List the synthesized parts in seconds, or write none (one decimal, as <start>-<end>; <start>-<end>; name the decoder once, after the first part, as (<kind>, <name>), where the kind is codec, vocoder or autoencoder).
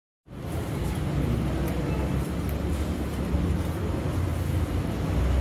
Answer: none